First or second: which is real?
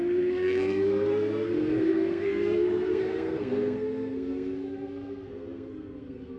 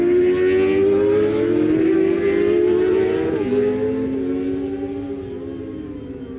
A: second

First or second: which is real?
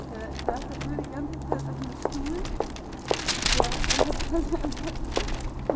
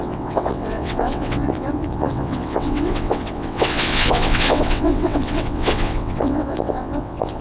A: first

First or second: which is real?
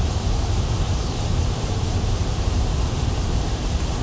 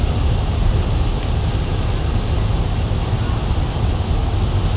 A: second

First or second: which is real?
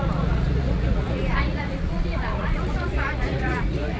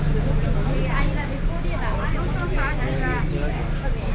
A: second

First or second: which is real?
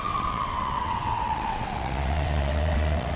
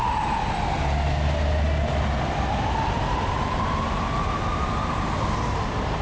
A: second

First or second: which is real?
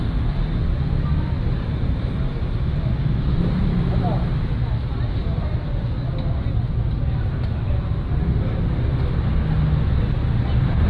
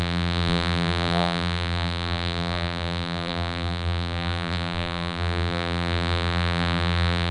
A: first